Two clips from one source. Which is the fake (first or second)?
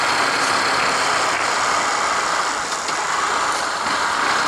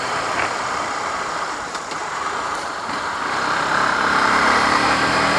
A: second